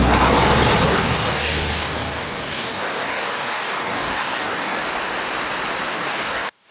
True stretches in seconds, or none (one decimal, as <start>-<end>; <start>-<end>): 0.0-0.9; 4.8-5.9